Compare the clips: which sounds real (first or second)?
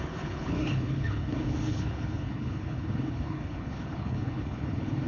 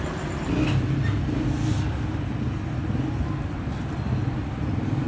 second